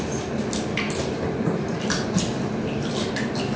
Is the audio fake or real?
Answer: real